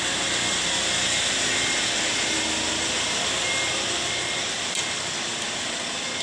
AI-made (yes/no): no